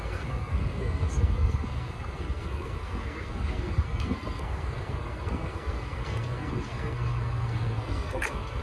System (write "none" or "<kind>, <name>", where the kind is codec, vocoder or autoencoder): codec, SNAC